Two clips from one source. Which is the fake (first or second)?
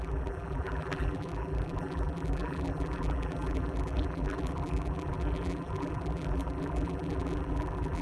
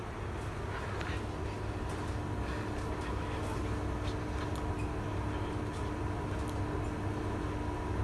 first